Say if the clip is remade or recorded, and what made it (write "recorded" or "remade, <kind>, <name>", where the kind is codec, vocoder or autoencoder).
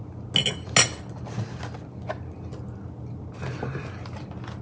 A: recorded